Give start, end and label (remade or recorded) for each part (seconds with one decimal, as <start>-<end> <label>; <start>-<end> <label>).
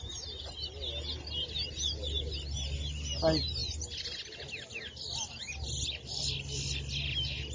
0.0-7.5 recorded